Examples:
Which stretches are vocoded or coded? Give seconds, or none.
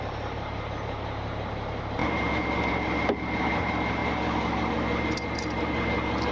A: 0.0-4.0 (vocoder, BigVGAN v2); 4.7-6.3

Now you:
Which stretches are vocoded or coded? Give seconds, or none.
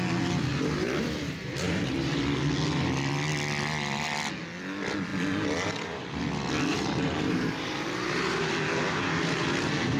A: 0.5-2.2 (vocoder, BigVGAN v2); 6.7-8.4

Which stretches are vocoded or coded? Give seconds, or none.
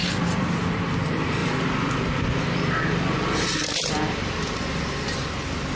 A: 0.0-0.8 (vocoder, BigVGAN v2); 1.4-4.6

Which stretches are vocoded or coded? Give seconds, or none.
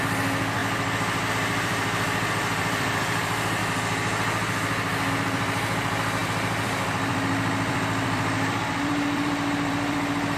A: 0.0-0.6 (vocoder, BigVGAN v2); 1.3-3.6; 5.1-10.4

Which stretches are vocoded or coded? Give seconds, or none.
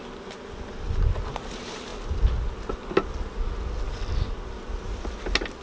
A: none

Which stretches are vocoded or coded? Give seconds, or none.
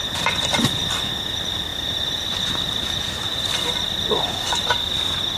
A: 1.7-4.9 (vocoder, BigVGAN v2)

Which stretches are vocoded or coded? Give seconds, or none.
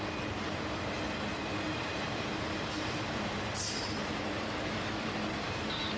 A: 1.3-4.9 (vocoder, BigVGAN v2)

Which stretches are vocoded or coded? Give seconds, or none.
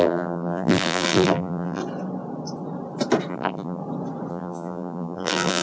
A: 0.0-1.8 (vocoder, BigVGAN v2); 3.3-3.8; 4.3-5.6